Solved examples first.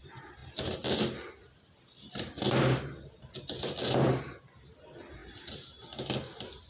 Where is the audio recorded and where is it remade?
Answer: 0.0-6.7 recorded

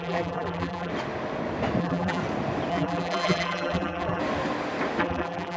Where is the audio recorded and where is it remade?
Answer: 0.0-0.9 remade; 0.9-1.8 recorded; 1.8-2.2 remade; 2.2-2.7 recorded; 2.7-4.2 remade; 4.2-5.0 recorded; 5.0-5.6 remade

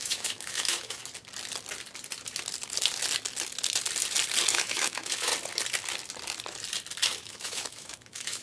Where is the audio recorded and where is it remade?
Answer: 0.0-1.0 remade; 1.0-4.5 recorded; 4.5-5.3 remade; 5.3-7.2 recorded; 7.2-8.4 remade

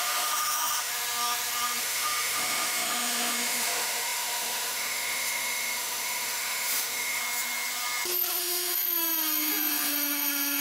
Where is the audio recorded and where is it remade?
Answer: 0.0-0.9 remade; 0.9-1.8 recorded; 1.8-7.2 remade; 7.2-8.4 recorded; 8.4-10.6 remade

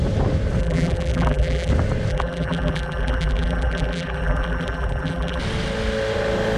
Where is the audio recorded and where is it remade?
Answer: 0.0-0.6 recorded; 0.6-1.7 remade; 1.7-2.1 recorded; 2.1-5.4 remade; 5.4-6.6 recorded

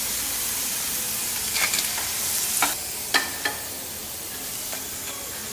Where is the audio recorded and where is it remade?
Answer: 0.0-5.5 recorded

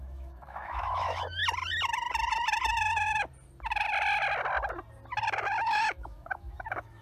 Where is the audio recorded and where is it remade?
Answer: 0.0-1.4 remade; 1.4-5.6 recorded; 5.6-7.0 remade